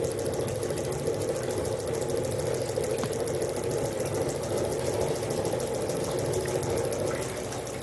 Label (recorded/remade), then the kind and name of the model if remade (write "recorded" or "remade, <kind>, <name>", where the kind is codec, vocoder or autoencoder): recorded